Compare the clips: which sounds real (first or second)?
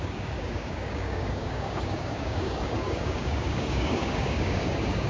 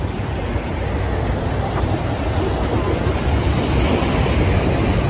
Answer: second